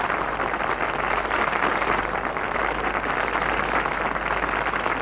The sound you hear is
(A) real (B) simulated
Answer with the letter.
A